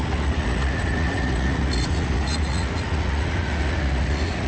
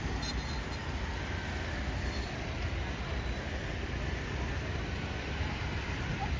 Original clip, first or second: second